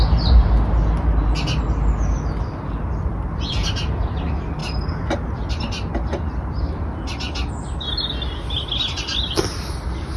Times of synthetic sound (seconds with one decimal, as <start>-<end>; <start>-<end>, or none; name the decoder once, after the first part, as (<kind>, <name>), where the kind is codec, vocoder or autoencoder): none